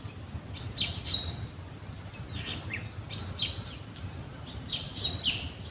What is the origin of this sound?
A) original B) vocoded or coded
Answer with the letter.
A